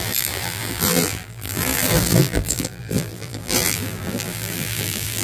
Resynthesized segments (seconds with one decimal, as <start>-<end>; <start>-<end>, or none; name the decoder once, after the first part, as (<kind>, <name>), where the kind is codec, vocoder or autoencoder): 0.0-5.2 (vocoder, BigVGAN v2)